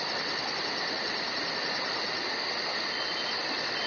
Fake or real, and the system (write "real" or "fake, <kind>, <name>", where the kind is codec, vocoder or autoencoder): real